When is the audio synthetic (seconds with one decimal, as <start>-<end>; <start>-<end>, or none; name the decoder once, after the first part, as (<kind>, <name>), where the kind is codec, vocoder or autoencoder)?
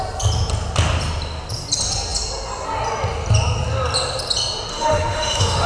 4.7-5.7 (autoencoder, DAC-VAE)